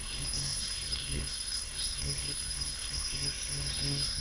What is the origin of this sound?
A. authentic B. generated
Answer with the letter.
B